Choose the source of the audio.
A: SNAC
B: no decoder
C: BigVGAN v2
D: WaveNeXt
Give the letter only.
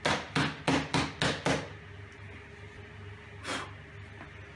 B